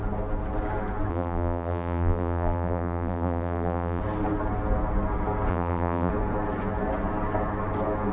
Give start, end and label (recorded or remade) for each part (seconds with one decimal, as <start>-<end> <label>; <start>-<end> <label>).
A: 0.0-1.1 recorded; 1.1-4.0 remade; 4.0-5.5 recorded; 5.5-6.1 remade; 6.1-8.1 recorded

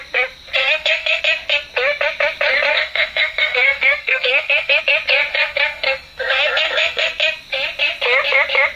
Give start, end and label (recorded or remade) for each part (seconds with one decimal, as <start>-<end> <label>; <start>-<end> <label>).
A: 0.0-0.6 recorded; 0.6-1.2 remade; 1.2-2.7 recorded; 2.7-4.8 remade; 4.8-5.3 recorded; 5.3-7.1 remade; 7.1-8.8 recorded

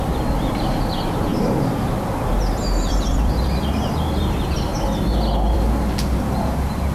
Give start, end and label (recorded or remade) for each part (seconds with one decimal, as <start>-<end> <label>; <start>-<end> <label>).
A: 0.0-1.3 remade; 1.3-2.9 recorded; 2.9-4.7 remade; 4.7-5.5 recorded; 5.5-6.9 remade

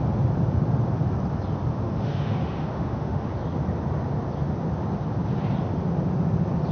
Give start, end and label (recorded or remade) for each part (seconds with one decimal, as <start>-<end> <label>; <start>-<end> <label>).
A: 0.0-1.7 recorded; 1.7-3.3 remade; 3.3-6.7 recorded

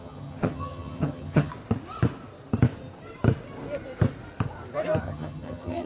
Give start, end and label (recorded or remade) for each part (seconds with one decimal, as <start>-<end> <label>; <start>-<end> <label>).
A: 0.0-1.5 remade; 1.5-5.0 recorded; 5.0-5.9 remade

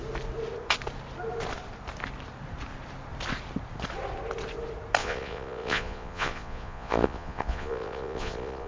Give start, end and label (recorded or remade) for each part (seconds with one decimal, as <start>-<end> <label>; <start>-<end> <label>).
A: 0.0-5.0 recorded; 5.0-8.7 remade

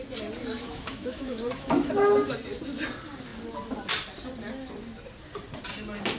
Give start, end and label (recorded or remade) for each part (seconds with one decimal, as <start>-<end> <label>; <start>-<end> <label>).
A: 0.0-0.4 recorded; 0.4-1.9 remade; 1.9-6.2 recorded